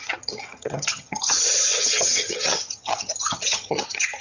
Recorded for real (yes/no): no